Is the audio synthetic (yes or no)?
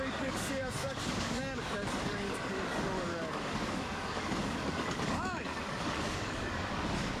yes